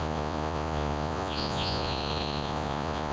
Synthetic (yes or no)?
yes